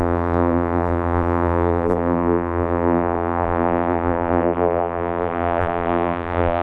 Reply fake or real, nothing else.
fake